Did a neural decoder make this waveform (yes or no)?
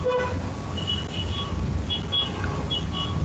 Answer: no